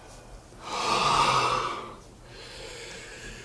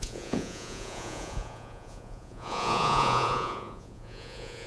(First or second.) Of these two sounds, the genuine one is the first